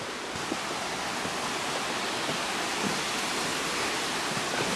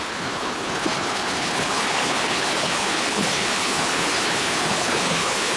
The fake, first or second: second